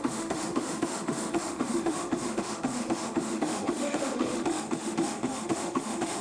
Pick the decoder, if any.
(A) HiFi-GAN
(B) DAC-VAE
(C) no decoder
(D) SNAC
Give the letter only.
B